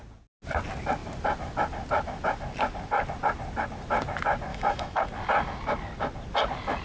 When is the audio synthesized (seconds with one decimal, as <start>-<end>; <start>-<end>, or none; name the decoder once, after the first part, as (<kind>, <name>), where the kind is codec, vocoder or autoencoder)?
4.5-5.0 (autoencoder, DAC-VAE)